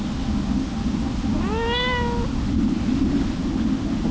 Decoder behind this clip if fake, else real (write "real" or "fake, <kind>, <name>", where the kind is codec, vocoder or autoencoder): real